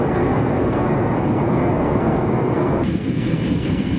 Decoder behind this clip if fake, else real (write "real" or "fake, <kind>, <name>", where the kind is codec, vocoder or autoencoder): fake, codec, SNAC